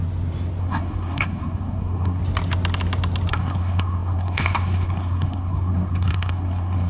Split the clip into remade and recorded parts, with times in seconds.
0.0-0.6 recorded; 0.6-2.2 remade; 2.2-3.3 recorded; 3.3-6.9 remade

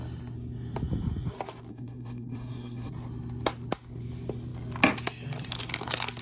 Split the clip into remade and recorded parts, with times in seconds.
0.0-1.7 recorded; 1.7-2.9 remade; 2.9-6.2 recorded

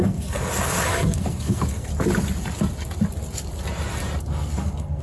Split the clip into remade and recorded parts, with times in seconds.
0.0-1.9 remade; 1.9-4.2 recorded; 4.2-5.0 remade

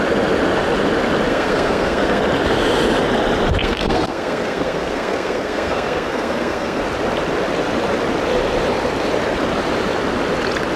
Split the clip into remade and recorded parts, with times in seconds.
0.0-1.3 recorded; 1.3-2.2 remade; 2.2-3.6 recorded; 3.6-6.8 remade; 6.8-10.8 recorded